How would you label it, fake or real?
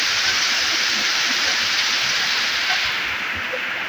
fake